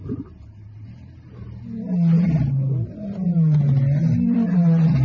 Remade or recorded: recorded